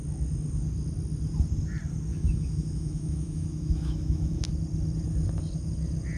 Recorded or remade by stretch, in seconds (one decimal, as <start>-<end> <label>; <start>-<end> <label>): 0.0-2.1 recorded; 2.1-4.5 remade; 4.5-6.2 recorded